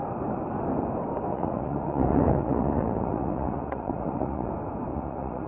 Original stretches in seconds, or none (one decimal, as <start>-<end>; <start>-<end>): 0.0-1.3; 4.5-4.9